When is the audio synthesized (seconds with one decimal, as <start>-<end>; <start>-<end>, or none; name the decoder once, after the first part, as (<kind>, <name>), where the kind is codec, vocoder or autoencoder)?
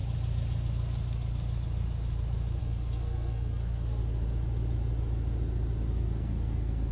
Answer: 2.6-4.0 (codec, SNAC); 5.9-6.9